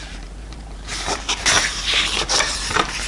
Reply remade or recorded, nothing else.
remade